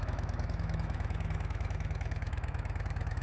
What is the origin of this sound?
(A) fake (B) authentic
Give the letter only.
A